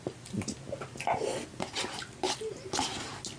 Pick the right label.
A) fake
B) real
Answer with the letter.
B